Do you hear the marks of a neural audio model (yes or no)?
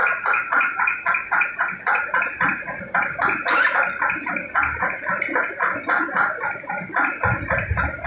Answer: no